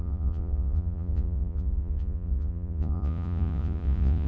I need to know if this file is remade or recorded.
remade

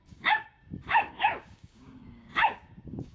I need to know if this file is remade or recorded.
remade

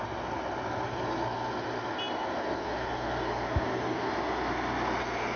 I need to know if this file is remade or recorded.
recorded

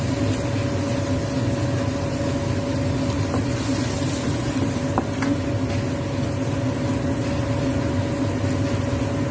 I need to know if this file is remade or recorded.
recorded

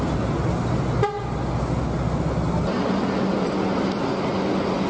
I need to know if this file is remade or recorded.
recorded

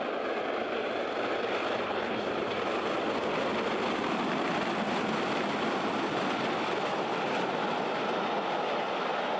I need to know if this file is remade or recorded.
recorded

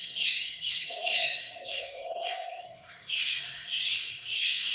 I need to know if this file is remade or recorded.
remade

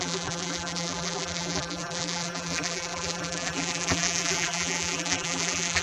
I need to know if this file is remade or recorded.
remade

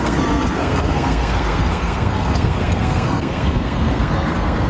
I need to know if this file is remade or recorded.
remade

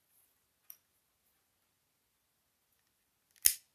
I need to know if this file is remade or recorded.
recorded